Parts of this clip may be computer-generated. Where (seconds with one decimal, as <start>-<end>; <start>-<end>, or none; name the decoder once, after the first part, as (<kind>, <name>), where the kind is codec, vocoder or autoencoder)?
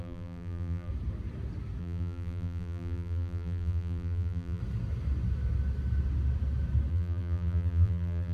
0.0-0.9 (vocoder, BigVGAN v2); 1.8-4.6; 6.9-8.3